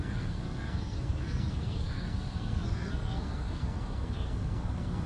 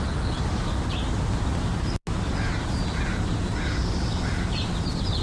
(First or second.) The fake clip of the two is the first